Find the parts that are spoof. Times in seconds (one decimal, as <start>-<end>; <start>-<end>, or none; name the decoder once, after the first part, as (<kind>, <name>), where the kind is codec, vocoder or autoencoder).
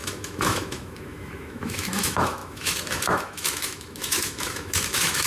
0.0-5.3 (autoencoder, DAC-VAE)